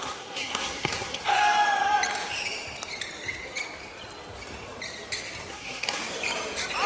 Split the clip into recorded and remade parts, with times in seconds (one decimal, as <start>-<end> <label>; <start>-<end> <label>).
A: 0.0-1.4 remade; 1.4-5.5 recorded; 5.5-6.0 remade; 6.0-6.9 recorded